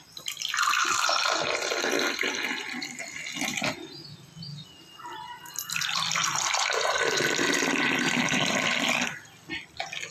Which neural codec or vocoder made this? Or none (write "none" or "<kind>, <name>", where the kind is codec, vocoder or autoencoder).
none